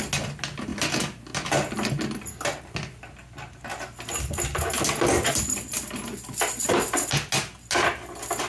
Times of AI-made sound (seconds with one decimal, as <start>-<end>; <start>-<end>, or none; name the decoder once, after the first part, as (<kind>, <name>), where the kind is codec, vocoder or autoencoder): none